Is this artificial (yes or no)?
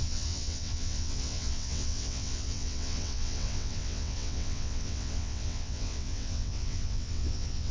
yes